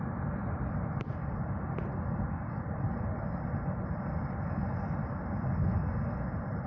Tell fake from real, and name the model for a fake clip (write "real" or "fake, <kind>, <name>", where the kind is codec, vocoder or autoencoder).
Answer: real